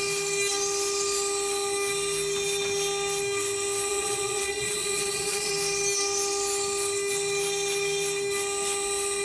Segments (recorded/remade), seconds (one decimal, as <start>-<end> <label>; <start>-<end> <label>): 0.0-3.9 recorded; 3.9-5.5 remade; 5.5-9.2 recorded